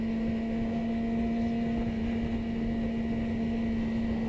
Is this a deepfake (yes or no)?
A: no